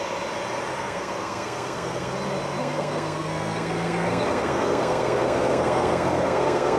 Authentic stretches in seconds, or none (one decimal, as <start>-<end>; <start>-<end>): 0.0-0.7; 2.1-2.6